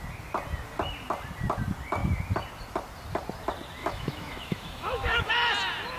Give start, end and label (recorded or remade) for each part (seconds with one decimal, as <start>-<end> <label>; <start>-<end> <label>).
0.0-3.8 recorded; 3.8-5.3 remade; 5.3-6.0 recorded